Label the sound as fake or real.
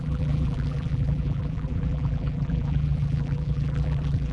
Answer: fake